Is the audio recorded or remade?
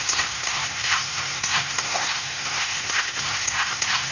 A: remade